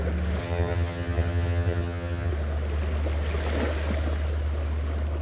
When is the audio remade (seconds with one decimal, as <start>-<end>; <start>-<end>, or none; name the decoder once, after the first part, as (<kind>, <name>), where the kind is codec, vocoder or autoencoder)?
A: 0.4-2.3 (vocoder, HiFi-GAN)